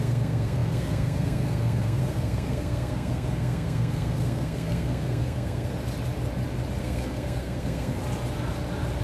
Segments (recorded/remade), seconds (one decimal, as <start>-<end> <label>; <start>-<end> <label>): 0.0-5.7 remade; 5.7-6.8 recorded; 6.8-8.0 remade; 8.0-9.0 recorded